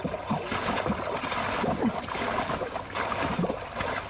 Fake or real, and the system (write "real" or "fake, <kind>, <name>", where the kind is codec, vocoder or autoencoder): real